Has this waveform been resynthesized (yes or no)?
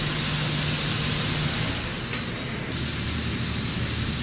no